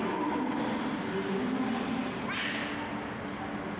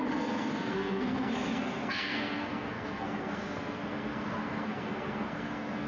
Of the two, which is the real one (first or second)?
first